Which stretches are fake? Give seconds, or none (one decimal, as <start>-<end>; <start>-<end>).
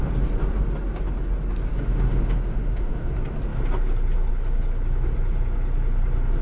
1.7-3.1